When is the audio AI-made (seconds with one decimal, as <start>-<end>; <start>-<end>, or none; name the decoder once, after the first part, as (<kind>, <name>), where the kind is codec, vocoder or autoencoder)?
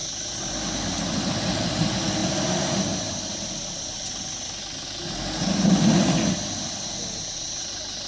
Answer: 2.2-3.9 (vocoder, BigVGAN v2)